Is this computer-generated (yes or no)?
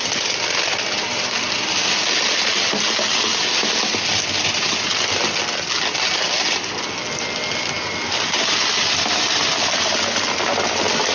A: no